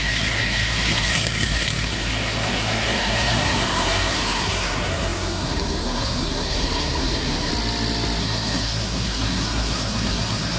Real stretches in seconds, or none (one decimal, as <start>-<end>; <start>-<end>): 7.5-8.2